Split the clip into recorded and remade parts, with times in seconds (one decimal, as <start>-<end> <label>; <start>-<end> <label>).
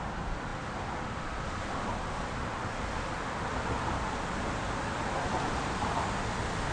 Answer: 0.0-6.7 recorded